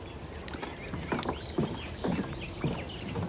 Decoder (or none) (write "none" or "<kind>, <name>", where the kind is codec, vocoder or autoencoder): none